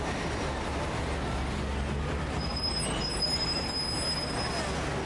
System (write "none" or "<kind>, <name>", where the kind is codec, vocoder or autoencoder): none